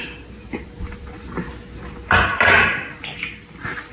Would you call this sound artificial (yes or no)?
no